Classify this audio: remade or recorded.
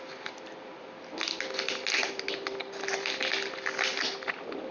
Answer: recorded